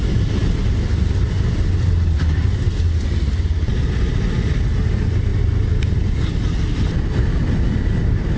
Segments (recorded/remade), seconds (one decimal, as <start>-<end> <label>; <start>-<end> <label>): 0.0-8.4 recorded